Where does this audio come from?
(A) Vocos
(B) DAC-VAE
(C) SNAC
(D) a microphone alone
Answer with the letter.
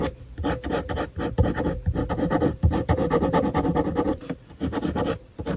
D